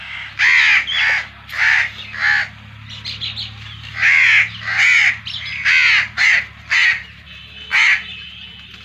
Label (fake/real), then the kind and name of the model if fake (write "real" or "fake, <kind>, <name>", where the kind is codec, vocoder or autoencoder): real